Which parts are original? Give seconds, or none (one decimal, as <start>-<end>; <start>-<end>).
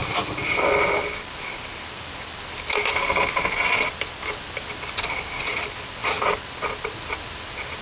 0.6-7.8